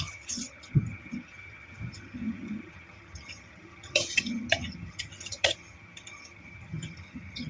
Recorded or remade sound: remade